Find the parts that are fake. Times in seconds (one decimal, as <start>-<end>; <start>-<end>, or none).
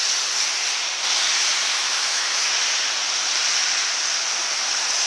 1.7-2.5